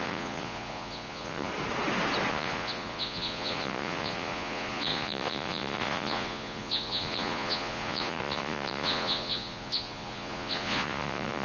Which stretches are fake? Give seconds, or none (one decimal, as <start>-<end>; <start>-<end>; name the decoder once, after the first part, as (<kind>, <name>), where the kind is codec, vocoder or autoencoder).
0.0-1.5 (vocoder, Vocos); 2.3-11.4